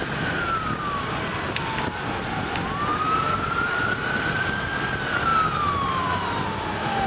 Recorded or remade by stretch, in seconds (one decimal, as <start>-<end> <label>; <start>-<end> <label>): 0.0-7.1 recorded